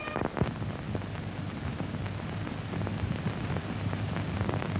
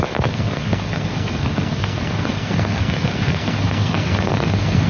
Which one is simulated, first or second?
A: second